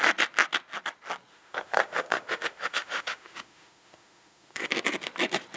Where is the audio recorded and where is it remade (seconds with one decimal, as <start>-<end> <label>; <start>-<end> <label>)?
0.0-1.3 recorded; 1.3-4.7 remade; 4.7-5.6 recorded